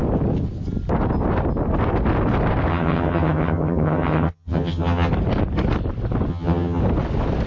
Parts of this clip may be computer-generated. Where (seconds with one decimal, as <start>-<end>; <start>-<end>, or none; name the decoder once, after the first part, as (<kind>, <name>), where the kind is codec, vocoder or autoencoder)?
2.7-5.1 (vocoder, HiFi-GAN); 6.3-6.8